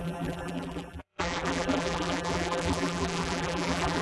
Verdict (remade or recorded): remade